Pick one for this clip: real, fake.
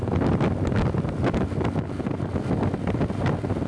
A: real